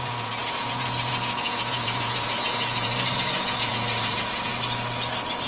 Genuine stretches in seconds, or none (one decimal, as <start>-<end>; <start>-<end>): 4.5-5.5